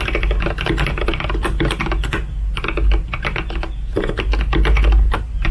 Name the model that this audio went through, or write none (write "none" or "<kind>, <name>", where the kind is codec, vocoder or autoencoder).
none